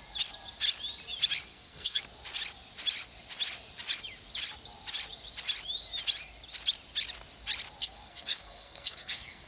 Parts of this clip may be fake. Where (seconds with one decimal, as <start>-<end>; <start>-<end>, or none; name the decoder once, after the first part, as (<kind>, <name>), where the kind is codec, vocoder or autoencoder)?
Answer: 1.5-2.0 (codec, SNAC); 7.8-9.5